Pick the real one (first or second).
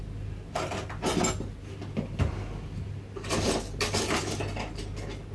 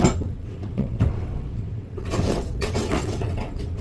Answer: first